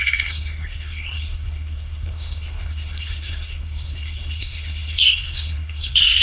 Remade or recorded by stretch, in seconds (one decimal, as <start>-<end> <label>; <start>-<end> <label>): 0.0-6.2 remade